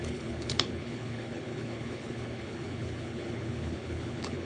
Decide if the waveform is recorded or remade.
remade